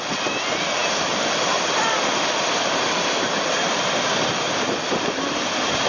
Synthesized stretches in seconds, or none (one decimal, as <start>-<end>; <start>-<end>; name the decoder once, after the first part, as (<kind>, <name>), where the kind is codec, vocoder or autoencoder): none